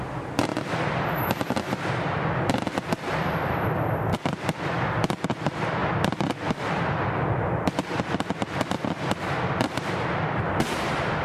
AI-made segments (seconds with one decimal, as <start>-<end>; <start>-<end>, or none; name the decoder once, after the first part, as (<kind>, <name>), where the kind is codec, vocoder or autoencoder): none